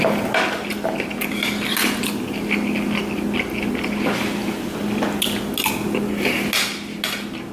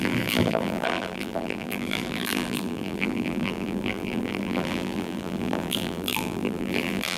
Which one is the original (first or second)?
first